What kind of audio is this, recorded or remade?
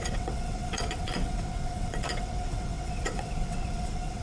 remade